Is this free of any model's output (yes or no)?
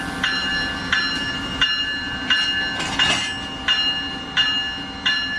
yes